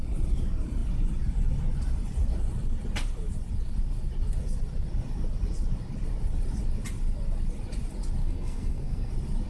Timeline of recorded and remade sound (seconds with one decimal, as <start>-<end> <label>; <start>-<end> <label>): 0.0-8.2 recorded; 8.2-9.1 remade; 9.1-9.5 recorded